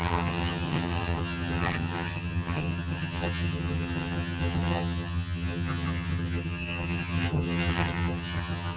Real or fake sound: fake